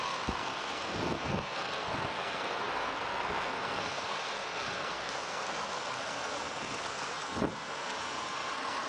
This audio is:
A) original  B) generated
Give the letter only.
B